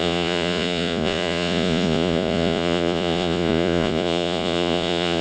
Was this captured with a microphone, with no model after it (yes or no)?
no